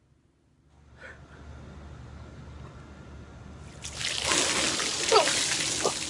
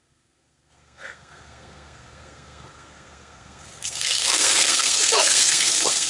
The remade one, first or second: second